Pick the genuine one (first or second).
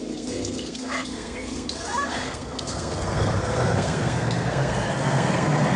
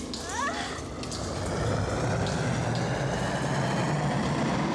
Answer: second